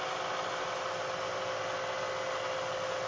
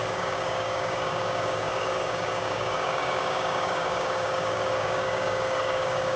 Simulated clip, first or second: second